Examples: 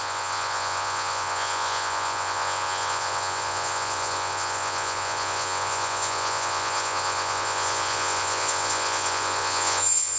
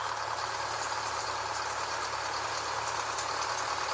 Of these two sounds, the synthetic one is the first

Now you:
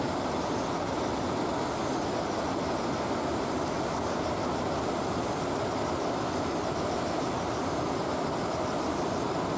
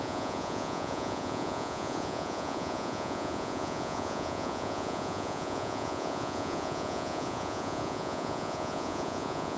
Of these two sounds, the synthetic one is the second